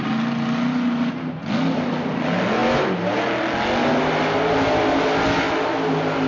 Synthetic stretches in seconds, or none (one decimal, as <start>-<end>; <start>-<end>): none